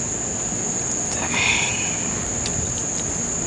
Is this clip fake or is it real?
real